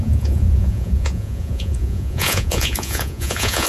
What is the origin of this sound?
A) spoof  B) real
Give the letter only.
A